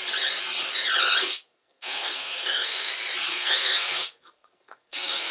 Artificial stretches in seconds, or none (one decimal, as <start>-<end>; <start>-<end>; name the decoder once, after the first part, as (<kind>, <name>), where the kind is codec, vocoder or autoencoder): 1.2-2.9 (codec, SNAC); 3.3-5.3